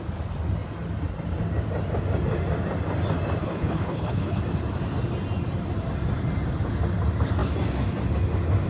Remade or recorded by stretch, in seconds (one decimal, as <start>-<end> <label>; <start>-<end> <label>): 0.0-3.4 recorded; 3.4-4.4 remade; 4.4-8.7 recorded